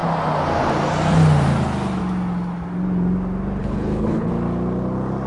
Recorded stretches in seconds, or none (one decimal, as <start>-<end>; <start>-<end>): 0.0-3.6; 4.3-5.3